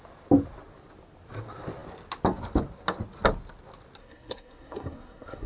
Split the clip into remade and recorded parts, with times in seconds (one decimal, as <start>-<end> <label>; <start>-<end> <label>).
0.0-4.0 recorded; 4.0-5.5 remade